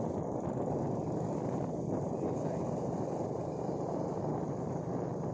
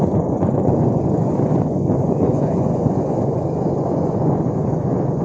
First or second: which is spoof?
second